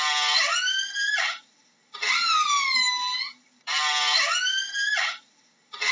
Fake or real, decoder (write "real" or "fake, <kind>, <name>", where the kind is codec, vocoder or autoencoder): real